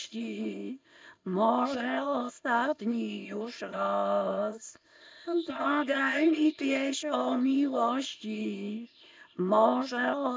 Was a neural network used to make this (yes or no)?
yes